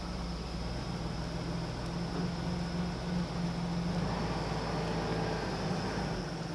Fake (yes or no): no